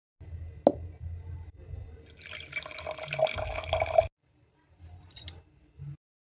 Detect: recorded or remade recorded